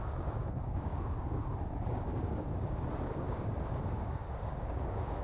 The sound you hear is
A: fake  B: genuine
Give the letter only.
A